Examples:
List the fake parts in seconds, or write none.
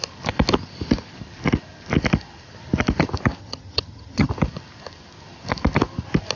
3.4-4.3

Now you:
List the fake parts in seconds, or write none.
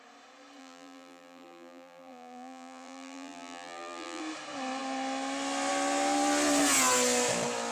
0.6-4.2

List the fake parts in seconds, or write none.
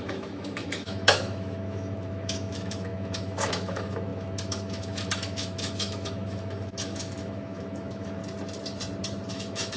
0.0-8.2; 9.3-9.8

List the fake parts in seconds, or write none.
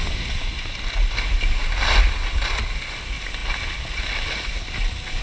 none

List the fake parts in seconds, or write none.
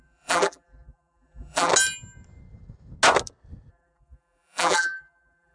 0.0-1.7; 3.7-5.5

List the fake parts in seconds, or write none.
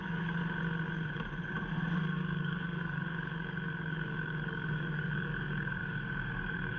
0.0-0.4; 1.9-6.8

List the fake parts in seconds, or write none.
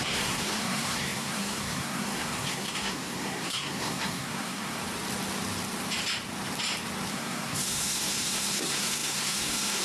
0.0-4.8; 7.1-9.8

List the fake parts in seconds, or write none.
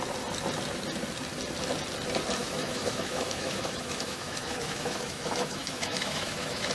2.4-6.7